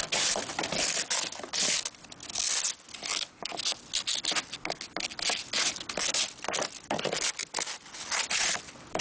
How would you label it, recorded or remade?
recorded